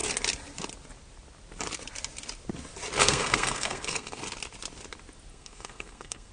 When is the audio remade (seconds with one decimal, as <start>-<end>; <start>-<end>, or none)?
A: 3.0-4.2; 5.3-6.3